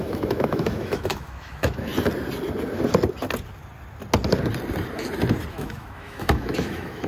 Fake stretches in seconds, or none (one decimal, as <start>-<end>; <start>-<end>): 0.0-1.9; 5.5-7.1